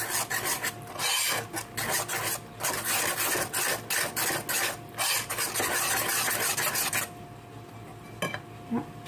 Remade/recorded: recorded